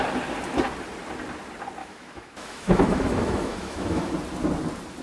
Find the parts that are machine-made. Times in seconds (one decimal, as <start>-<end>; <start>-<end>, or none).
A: 1.8-4.1